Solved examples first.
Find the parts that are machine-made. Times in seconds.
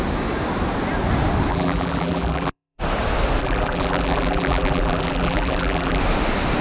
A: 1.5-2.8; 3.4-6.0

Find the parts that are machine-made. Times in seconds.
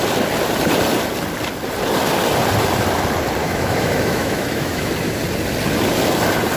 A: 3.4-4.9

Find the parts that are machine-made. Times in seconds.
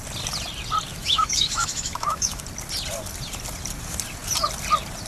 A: 0.9-2.4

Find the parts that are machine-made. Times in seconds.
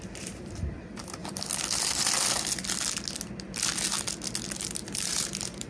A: 0.0-1.2; 4.6-5.7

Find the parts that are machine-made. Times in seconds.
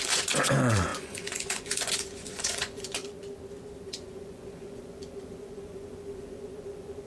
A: 0.0-3.0; 3.9-7.1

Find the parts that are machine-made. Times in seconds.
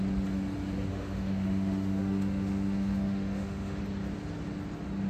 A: 0.9-3.8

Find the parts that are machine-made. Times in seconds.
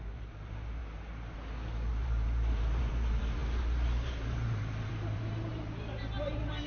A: 0.0-0.8; 1.9-6.7